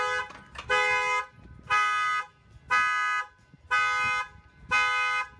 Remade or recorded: recorded